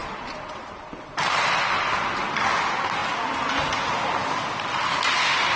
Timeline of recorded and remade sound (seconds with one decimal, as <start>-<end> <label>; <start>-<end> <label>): 0.0-1.6 remade; 1.6-5.6 recorded